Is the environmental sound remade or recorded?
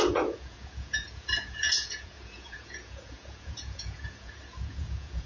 remade